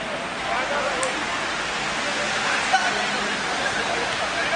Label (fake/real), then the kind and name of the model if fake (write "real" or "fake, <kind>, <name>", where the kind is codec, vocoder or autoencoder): real